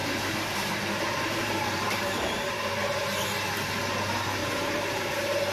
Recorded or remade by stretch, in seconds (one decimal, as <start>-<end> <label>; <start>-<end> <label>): 0.0-3.3 remade; 3.3-4.4 recorded; 4.4-5.0 remade; 5.0-5.5 recorded